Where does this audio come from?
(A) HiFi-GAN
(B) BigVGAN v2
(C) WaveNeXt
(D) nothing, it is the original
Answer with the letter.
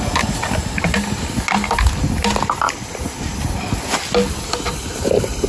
D